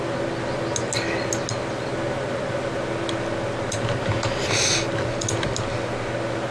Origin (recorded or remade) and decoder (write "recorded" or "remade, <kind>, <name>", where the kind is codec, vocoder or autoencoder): recorded